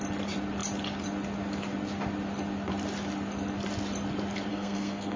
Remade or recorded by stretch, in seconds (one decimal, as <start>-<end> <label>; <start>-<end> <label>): 0.0-4.5 recorded; 4.5-5.2 remade